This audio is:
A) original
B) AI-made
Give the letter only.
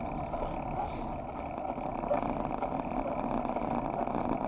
A